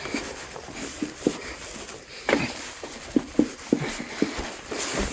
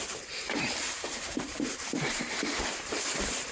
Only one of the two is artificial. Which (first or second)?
second